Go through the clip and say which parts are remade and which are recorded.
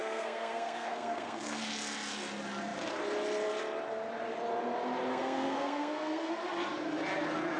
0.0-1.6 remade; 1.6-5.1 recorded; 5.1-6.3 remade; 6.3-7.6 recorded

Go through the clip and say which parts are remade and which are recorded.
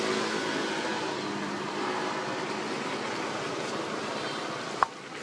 0.0-5.2 recorded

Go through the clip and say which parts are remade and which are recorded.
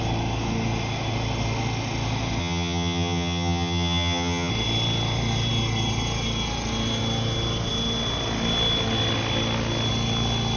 0.0-2.4 recorded; 2.4-4.5 remade; 4.5-10.6 recorded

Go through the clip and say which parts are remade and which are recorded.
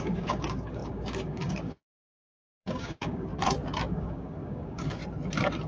0.0-3.3 remade; 3.3-3.9 recorded; 3.9-5.0 remade; 5.0-5.7 recorded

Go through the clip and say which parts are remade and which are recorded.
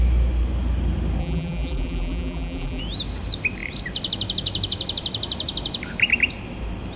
0.0-1.2 recorded; 1.2-2.8 remade; 2.8-7.0 recorded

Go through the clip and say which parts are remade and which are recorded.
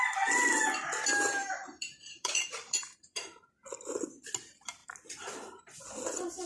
0.0-1.4 recorded; 1.4-3.2 remade; 3.2-6.5 recorded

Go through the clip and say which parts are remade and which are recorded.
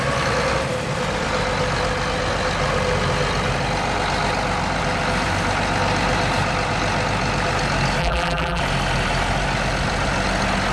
0.0-8.0 recorded; 8.0-8.6 remade; 8.6-10.7 recorded